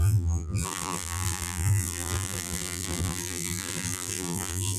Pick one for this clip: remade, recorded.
remade